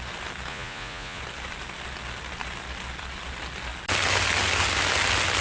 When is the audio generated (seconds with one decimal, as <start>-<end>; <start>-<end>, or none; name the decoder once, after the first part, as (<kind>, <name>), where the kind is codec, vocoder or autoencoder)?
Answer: 0.5-1.2 (vocoder, Vocos)